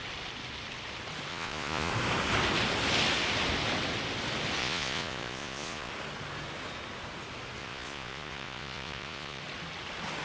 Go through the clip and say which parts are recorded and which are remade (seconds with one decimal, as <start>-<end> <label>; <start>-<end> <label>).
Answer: 0.0-1.3 recorded; 1.3-1.9 remade; 1.9-4.6 recorded; 4.6-5.9 remade; 5.9-7.6 recorded; 7.6-9.4 remade; 9.4-10.2 recorded